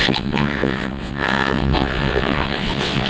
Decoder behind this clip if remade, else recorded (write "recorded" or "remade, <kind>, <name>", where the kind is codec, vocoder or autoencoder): remade, vocoder, WaveNeXt